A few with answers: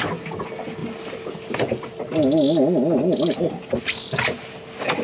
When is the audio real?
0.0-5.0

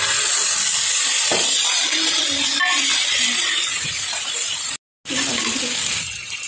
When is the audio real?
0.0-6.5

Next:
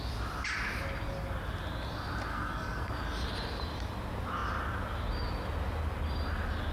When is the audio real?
0.0-2.3; 2.9-6.7

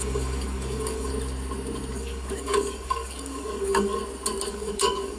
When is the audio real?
1.1-1.9; 4.0-4.5

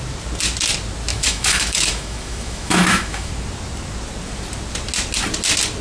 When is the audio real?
0.0-1.1; 3.3-5.8

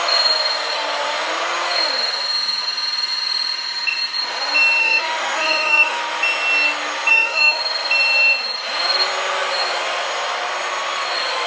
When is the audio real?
0.0-4.8; 6.0-7.1; 7.6-11.5

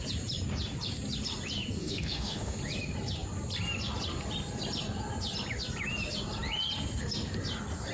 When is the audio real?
0.0-1.8; 2.6-7.9